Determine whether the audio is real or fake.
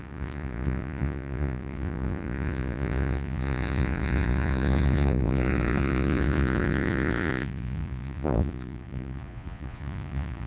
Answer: fake